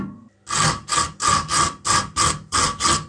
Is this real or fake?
real